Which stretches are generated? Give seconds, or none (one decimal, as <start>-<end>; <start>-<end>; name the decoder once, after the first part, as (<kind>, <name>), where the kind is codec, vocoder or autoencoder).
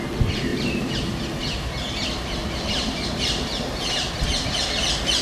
0.5-1.2 (vocoder, BigVGAN v2); 2.4-4.1